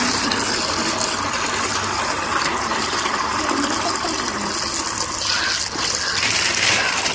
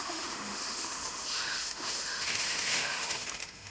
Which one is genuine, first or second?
first